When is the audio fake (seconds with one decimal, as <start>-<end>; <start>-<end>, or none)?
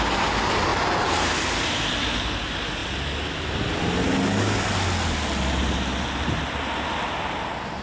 none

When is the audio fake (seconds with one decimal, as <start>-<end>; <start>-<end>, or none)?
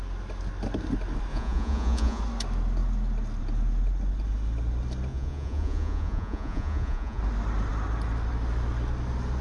1.3-2.2; 5.1-7.2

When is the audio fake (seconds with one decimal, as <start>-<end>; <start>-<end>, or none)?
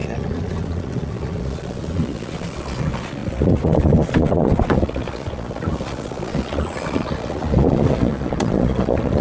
0.0-9.2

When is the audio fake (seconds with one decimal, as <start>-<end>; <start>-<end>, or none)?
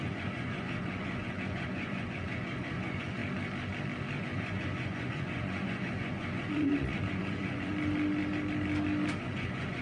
0.0-3.2; 4.2-7.7; 9.2-9.8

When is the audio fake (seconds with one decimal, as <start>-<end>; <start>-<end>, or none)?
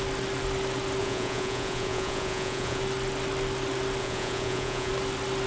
1.0-2.8; 4.0-4.9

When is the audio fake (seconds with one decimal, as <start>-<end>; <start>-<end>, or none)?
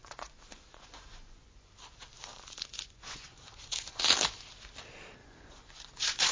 0.0-1.7; 2.3-4.0; 5.2-6.3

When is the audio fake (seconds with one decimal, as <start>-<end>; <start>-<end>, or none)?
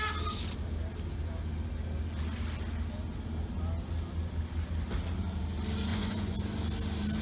5.9-6.4